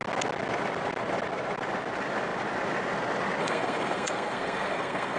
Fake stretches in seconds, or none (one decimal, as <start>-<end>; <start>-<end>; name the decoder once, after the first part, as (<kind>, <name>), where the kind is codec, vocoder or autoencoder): 3.4-5.2 (codec, SNAC)